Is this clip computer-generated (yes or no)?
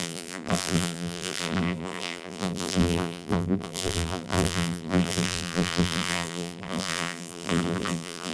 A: yes